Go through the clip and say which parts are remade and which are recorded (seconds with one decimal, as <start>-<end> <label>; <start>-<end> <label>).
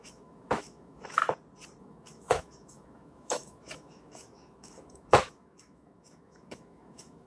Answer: 0.0-1.2 remade; 1.2-1.8 recorded; 1.8-7.3 remade